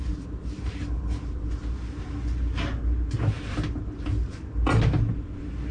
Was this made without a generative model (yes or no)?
yes